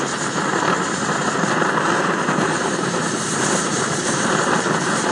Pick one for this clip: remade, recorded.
remade